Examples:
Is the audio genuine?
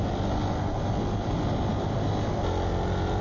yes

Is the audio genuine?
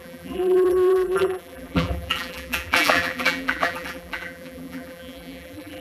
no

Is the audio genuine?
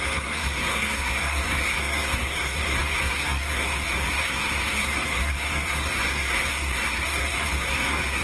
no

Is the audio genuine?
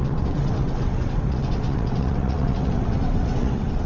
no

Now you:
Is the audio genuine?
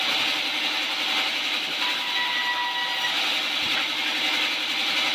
yes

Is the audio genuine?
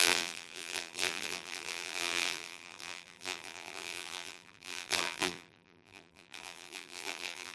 no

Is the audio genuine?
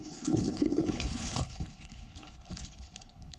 no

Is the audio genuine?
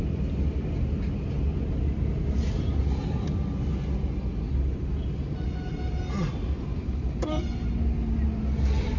yes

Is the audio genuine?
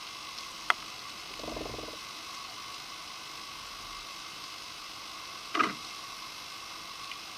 yes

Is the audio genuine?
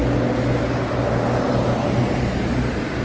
yes